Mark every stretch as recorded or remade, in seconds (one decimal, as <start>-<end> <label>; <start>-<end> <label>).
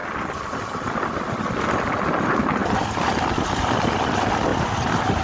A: 0.0-5.2 recorded